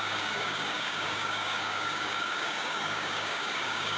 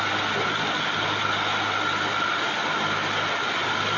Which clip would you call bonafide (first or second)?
second